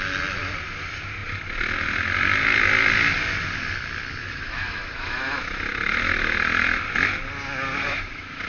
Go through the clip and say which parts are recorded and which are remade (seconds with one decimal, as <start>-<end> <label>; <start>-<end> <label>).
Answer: 0.0-4.2 recorded; 4.2-5.7 remade; 5.7-7.8 recorded; 7.8-8.5 remade